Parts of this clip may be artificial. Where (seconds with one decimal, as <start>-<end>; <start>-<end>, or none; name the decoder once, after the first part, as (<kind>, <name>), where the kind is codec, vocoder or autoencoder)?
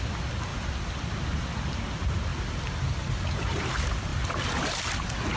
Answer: 0.5-1.0 (vocoder, BigVGAN v2); 4.1-4.6